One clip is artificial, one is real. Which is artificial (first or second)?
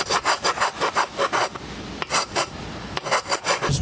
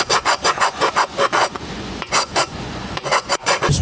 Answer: second